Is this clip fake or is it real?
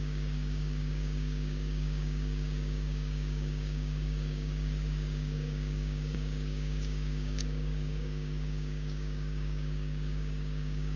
fake